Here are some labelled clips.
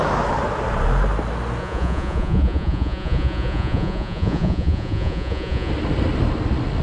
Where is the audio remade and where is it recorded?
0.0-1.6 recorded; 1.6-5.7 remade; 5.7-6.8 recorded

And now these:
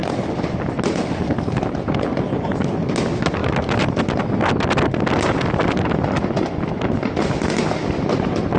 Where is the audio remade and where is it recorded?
0.0-8.6 recorded

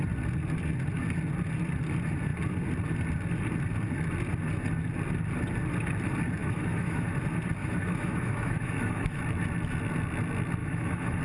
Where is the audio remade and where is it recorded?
0.0-6.4 recorded; 6.4-7.1 remade; 7.1-7.6 recorded; 7.6-9.2 remade; 9.2-10.6 recorded; 10.6-11.2 remade

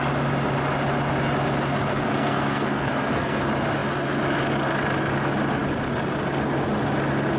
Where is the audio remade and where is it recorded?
0.0-1.9 recorded; 1.9-3.4 remade; 3.4-7.4 recorded

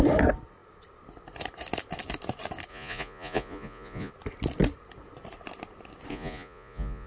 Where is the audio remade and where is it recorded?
0.0-2.7 recorded; 2.7-4.1 remade; 4.1-6.1 recorded; 6.1-7.1 remade